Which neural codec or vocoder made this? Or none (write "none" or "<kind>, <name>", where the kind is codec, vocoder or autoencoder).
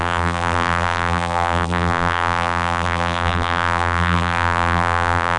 vocoder, BigVGAN v2